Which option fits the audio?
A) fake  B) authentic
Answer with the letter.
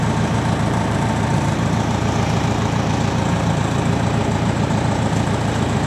A